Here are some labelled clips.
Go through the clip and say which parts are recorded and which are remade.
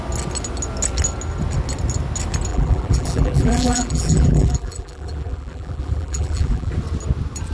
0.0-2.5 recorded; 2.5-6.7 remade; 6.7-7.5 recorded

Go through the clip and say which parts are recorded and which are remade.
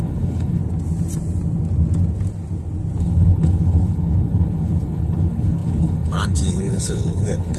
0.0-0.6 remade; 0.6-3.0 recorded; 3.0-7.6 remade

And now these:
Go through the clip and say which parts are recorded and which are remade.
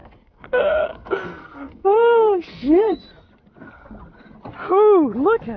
0.0-3.0 remade; 3.0-5.6 recorded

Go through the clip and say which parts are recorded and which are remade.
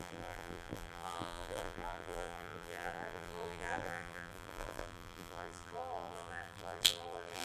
0.0-7.4 remade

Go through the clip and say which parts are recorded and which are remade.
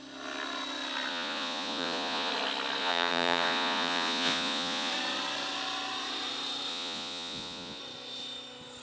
0.0-1.1 recorded; 1.1-2.3 remade; 2.3-2.8 recorded; 2.8-4.9 remade; 4.9-6.7 recorded; 6.7-7.8 remade; 7.8-8.8 recorded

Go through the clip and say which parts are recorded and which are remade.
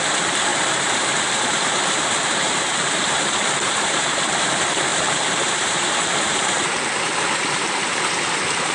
0.0-0.5 recorded; 0.5-4.5 remade; 4.5-4.9 recorded; 4.9-8.0 remade; 8.0-8.7 recorded